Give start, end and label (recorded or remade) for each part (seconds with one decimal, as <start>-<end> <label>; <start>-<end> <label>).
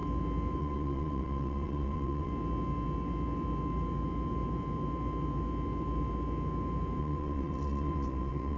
0.0-0.6 recorded; 0.6-2.3 remade; 2.3-7.0 recorded; 7.0-8.6 remade